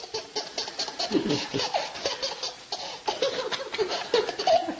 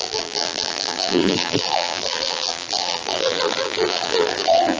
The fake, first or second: second